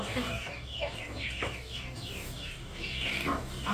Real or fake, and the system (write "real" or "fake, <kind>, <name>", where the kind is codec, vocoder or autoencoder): fake, codec, DAC